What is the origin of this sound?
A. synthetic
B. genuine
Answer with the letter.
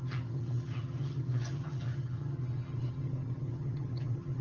A